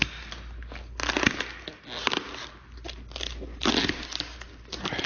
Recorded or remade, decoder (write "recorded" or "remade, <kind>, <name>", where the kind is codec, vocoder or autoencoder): recorded